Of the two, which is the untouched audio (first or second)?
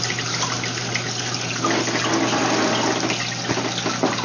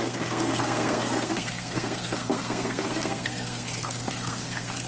first